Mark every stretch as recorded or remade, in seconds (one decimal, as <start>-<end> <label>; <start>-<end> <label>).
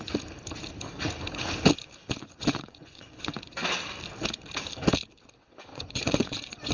0.0-2.0 recorded; 2.0-3.5 remade; 3.5-5.7 recorded; 5.7-6.7 remade